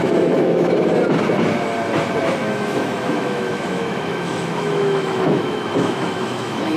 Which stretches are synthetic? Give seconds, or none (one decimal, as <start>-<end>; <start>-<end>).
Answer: 0.0-0.7; 2.4-6.8